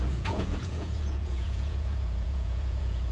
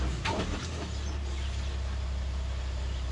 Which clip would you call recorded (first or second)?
second